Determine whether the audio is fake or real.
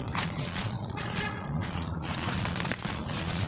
fake